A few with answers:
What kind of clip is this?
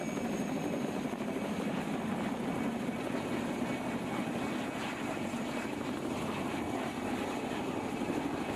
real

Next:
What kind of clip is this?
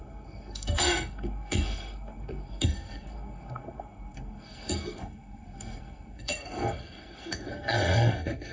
fake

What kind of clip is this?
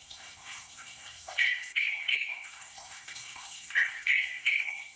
fake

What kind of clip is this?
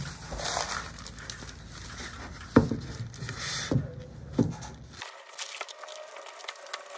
real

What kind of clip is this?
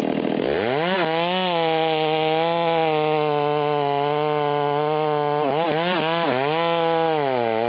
real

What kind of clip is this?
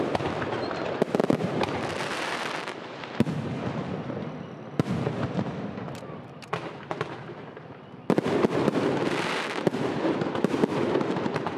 real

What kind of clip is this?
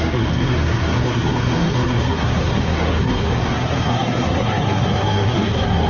fake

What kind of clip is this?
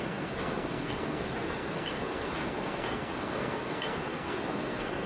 fake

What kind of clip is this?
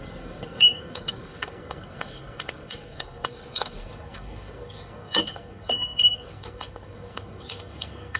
fake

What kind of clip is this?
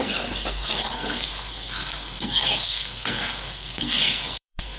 fake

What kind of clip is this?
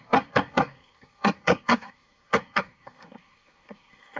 fake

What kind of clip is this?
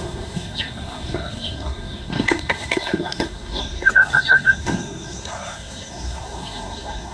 fake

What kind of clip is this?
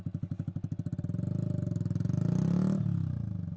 real